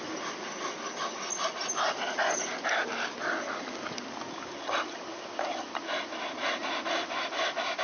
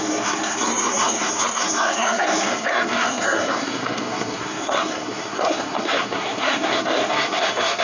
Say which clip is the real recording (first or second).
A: first